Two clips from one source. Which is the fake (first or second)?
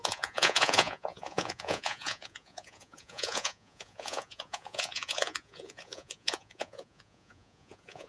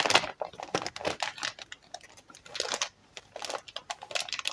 first